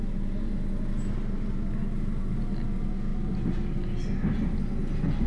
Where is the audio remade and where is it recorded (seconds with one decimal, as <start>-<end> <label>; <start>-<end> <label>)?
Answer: 0.0-5.3 recorded